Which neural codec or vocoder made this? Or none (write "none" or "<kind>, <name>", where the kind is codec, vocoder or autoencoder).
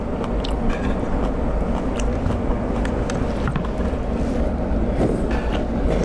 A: none